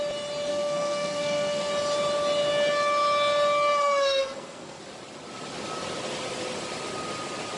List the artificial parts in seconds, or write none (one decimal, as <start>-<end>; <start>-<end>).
0.5-1.7; 3.8-4.8